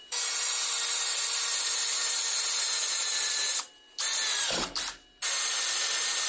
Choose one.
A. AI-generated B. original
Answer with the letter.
B